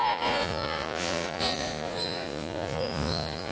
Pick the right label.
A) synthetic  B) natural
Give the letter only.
A